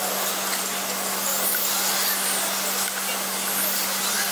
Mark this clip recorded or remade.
recorded